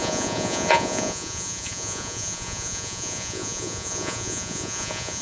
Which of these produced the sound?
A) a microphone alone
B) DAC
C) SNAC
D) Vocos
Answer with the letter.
D